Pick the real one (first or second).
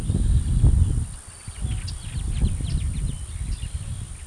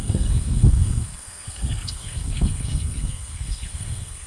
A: first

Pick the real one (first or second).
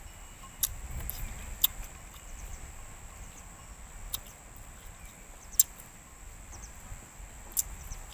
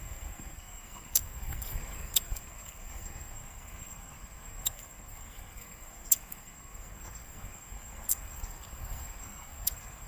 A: first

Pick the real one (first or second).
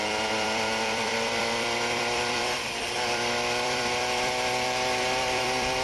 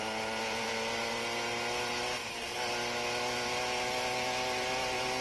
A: second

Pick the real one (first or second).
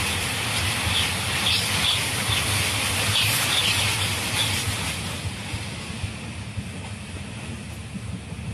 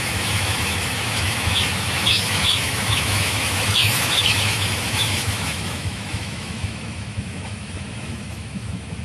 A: first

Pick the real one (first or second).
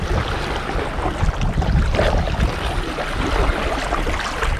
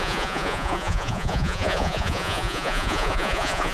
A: first